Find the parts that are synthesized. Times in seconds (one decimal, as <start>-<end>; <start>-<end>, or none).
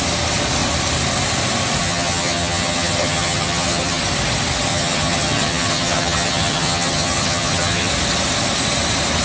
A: 1.8-4.0; 4.7-7.9